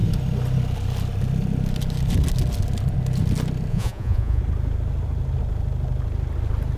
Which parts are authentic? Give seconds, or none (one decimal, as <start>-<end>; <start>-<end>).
0.0-3.7; 4.4-6.8